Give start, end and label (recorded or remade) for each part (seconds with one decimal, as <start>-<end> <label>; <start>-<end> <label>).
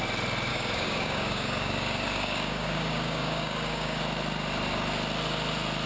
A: 0.0-0.5 recorded; 0.5-4.0 remade; 4.0-5.9 recorded